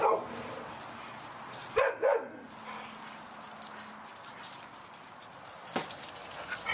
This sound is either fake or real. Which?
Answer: real